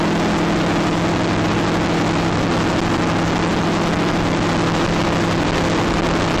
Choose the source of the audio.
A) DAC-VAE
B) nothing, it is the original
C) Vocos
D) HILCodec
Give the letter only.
B